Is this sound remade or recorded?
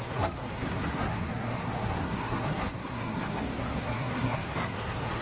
remade